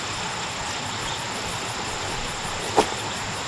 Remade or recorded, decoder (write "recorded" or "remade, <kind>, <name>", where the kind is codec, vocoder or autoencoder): recorded